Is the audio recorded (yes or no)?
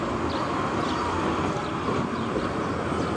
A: yes